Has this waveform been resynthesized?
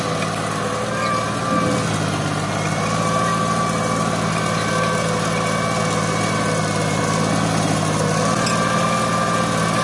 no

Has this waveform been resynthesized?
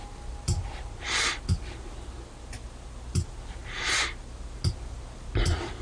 no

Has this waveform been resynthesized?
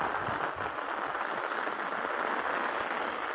no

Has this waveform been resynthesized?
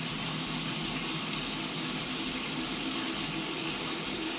no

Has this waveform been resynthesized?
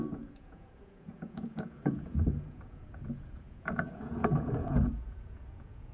yes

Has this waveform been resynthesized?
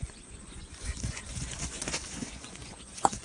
yes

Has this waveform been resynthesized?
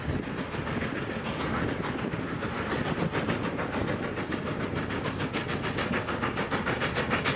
no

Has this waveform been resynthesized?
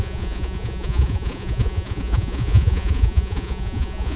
yes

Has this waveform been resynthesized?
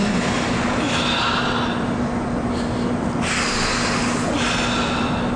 no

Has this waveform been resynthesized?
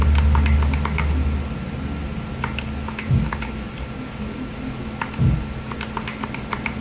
no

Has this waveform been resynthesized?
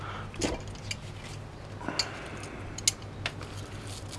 no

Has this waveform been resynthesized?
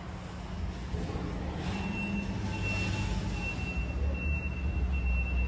no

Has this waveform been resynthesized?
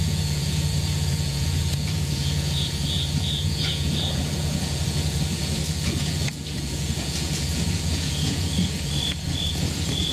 yes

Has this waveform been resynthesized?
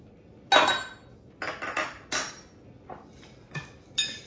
no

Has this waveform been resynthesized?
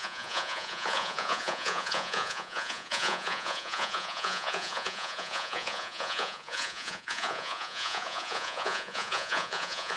yes